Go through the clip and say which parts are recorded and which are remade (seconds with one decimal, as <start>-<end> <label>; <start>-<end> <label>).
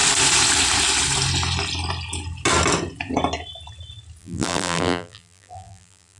0.0-4.2 recorded; 4.2-6.2 remade